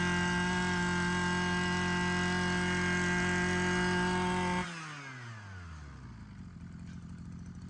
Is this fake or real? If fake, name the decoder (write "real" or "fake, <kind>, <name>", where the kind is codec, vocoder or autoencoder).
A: real